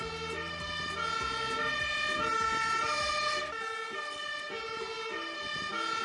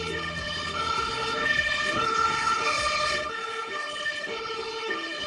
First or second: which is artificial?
second